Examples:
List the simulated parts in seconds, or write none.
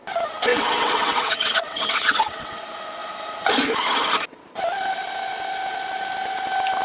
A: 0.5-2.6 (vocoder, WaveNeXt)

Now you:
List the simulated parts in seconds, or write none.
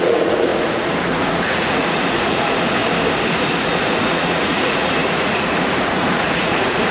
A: 0.0-2.8 (vocoder, Vocos); 3.4-6.9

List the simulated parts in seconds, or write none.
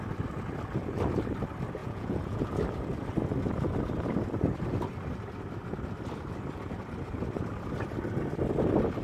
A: 1.8-2.5 (vocoder, Vocos)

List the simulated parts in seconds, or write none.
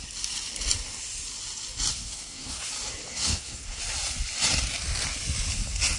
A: 1.9-2.7 (codec, SNAC); 3.1-3.8